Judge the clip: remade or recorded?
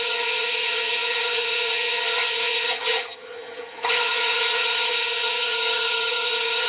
remade